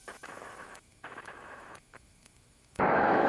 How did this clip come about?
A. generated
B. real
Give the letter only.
A